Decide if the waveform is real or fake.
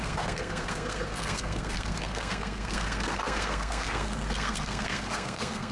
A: fake